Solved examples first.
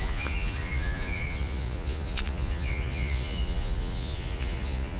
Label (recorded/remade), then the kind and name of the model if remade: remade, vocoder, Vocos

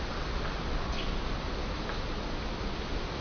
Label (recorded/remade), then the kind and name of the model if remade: recorded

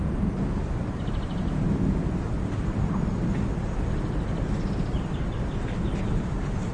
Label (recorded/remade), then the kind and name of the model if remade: recorded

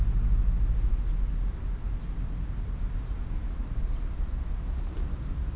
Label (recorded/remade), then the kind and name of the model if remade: recorded